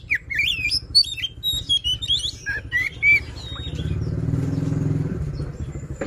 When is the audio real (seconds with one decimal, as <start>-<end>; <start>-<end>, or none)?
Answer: 0.0-6.1